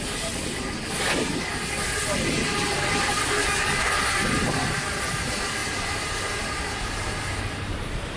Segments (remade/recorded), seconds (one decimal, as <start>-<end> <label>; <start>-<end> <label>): 0.0-3.2 recorded; 3.2-3.9 remade; 3.9-8.2 recorded